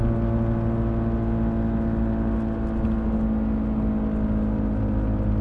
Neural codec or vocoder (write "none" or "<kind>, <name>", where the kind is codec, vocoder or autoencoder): none